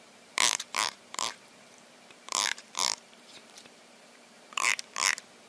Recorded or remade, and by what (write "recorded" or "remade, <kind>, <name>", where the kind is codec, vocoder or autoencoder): remade, vocoder, BigVGAN v2